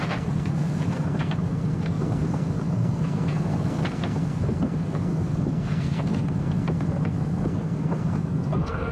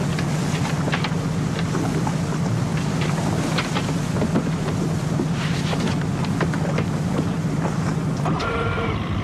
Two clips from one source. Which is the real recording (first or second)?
second